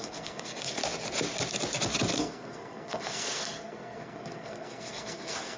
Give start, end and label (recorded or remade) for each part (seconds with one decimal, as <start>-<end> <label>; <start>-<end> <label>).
0.0-0.8 remade; 0.8-2.1 recorded; 2.1-5.6 remade